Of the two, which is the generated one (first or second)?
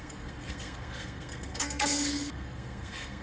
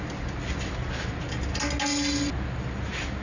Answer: first